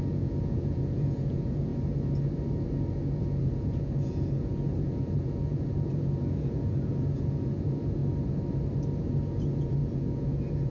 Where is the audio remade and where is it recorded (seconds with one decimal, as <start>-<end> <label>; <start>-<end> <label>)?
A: 0.0-1.7 remade; 1.7-3.2 recorded; 3.2-8.0 remade; 8.0-9.4 recorded; 9.4-10.7 remade